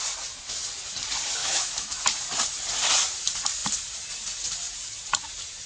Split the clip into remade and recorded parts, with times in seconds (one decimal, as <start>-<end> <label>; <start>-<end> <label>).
0.0-1.4 recorded; 1.4-2.0 remade; 2.0-5.7 recorded